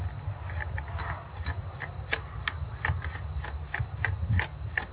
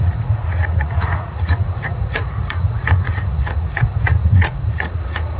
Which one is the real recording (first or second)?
first